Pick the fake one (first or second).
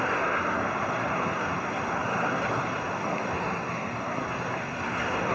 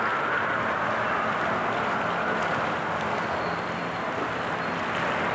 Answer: first